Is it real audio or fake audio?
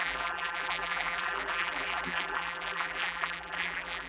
fake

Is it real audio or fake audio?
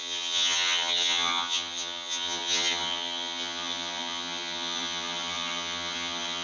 fake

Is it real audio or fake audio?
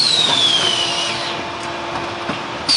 real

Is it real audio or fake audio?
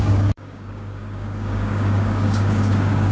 fake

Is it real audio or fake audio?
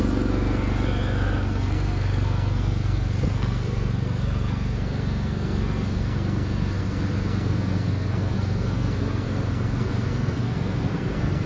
fake